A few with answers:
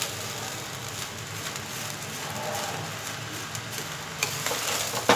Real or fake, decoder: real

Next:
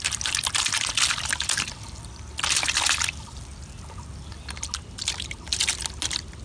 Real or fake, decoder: real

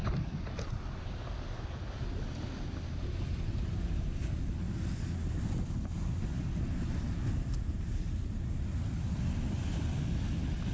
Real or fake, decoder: real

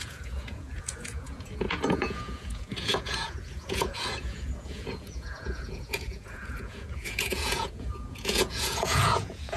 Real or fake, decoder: fake, vocoder, Vocos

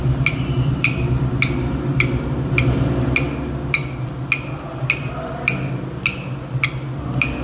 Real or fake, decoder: real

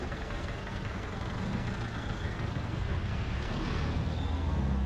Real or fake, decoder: fake, codec, SNAC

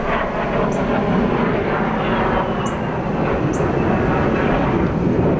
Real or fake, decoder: real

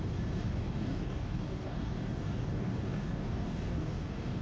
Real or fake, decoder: fake, codec, DAC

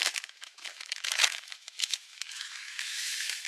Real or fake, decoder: fake, autoencoder, DAC-VAE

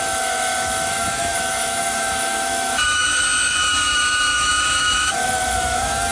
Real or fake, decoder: fake, autoencoder, DAC-VAE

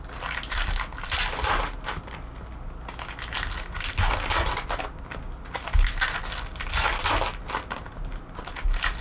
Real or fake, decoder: real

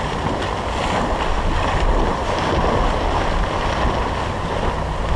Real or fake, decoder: real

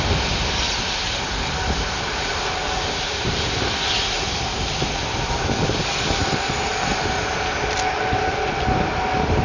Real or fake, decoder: real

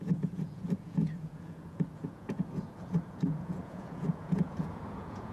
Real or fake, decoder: fake, vocoder, Vocos